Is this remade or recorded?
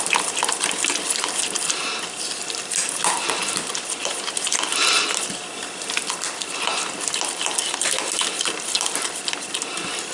recorded